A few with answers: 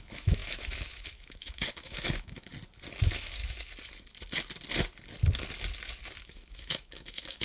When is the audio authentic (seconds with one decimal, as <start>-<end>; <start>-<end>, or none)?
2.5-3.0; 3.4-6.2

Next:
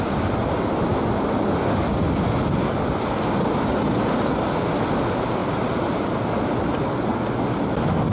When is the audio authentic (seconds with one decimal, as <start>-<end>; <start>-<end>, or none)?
0.0-8.1

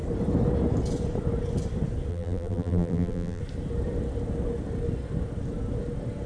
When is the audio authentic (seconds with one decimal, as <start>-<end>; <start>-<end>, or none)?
0.0-2.1; 3.4-6.3

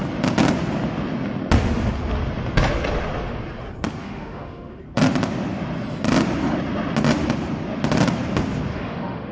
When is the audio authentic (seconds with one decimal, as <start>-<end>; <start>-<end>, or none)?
0.0-4.0; 4.8-8.7